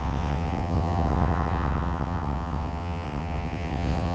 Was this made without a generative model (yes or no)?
no